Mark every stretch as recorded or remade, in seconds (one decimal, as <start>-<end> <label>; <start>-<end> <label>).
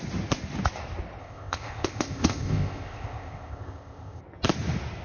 0.0-1.2 recorded; 1.2-4.2 remade; 4.2-5.0 recorded